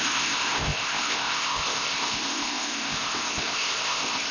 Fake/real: fake